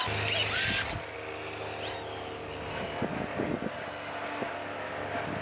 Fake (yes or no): no